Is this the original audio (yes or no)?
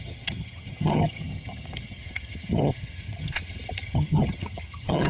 no